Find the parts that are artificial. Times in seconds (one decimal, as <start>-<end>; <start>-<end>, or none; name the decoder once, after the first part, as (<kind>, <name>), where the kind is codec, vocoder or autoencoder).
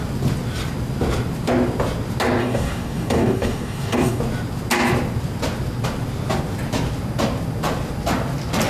2.4-4.2 (codec, DAC)